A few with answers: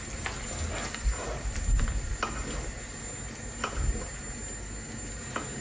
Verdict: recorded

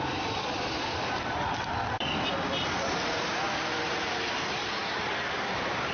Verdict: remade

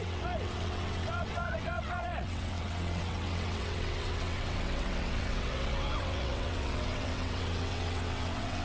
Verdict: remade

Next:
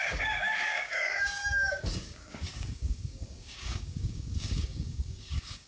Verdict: remade